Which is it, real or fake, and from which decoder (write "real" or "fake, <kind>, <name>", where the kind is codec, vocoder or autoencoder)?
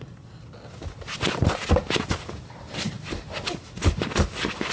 real